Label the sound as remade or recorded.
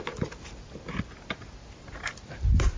recorded